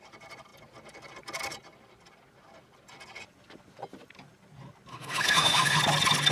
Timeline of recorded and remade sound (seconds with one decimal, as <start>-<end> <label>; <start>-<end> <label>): 0.0-4.9 recorded; 4.9-5.8 remade; 5.8-6.3 recorded